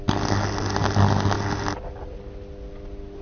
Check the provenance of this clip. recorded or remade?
recorded